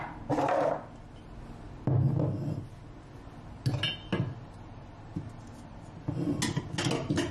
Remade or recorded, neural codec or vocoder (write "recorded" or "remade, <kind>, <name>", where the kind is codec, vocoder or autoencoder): recorded